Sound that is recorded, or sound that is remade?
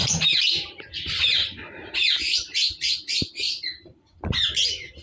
remade